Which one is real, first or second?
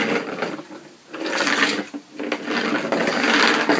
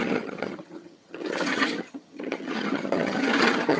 first